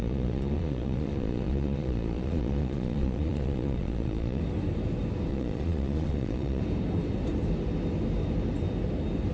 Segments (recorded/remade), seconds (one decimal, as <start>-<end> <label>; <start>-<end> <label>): 0.0-4.4 remade; 4.4-5.3 recorded; 5.3-6.6 remade; 6.6-9.3 recorded